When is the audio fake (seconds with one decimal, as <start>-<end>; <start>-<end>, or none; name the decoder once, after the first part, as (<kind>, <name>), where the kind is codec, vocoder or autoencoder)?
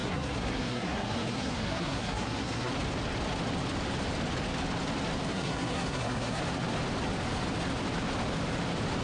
0.0-2.7 (codec, SNAC); 5.3-6.4